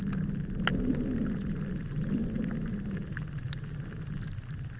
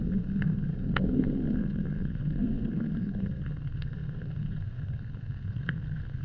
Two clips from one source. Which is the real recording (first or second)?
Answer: first